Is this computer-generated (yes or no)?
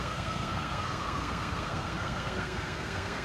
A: yes